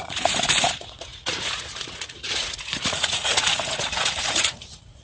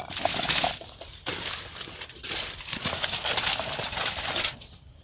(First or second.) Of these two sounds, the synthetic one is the first